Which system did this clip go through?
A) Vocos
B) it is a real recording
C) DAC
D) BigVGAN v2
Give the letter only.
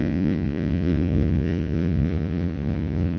A